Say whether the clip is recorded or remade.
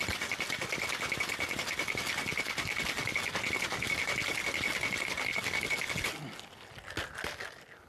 recorded